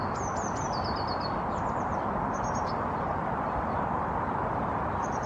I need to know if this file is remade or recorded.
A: remade